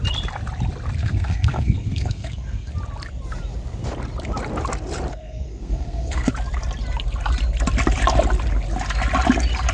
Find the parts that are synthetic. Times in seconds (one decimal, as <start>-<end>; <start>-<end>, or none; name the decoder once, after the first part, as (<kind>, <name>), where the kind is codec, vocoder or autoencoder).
1.0-2.7 (codec, SNAC); 5.1-6.3

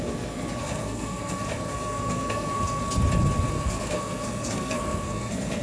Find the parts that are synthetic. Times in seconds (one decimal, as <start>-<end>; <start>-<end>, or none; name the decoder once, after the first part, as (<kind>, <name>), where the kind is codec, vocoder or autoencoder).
0.0-2.8 (codec, SNAC); 3.5-5.6

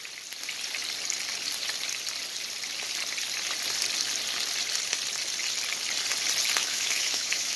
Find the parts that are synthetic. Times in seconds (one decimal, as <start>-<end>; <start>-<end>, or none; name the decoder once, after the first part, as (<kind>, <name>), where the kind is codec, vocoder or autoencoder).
6.6-7.6 (autoencoder, DAC-VAE)

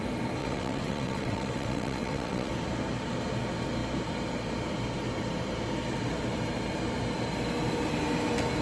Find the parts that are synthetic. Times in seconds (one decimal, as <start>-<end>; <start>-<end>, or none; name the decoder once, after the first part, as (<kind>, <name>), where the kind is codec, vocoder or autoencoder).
0.4-2.5 (vocoder, WaveNeXt)

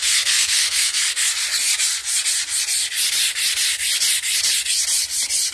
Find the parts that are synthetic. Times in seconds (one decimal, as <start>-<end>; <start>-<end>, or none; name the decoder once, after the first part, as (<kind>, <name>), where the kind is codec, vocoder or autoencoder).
0.0-1.0 (codec, SNAC)

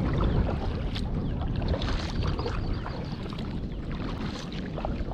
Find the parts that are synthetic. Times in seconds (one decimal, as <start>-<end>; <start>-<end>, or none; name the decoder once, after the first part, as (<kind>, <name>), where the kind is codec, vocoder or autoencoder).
none

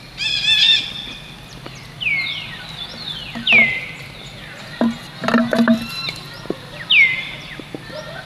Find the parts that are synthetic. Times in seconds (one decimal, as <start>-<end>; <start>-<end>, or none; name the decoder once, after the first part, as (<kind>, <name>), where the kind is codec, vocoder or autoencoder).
none

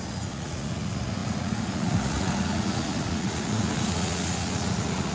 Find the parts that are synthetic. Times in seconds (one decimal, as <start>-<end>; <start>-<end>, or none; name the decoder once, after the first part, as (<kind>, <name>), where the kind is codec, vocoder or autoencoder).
0.0-5.1 (vocoder, Vocos)